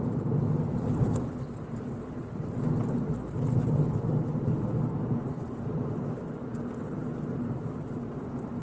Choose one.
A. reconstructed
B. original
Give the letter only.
B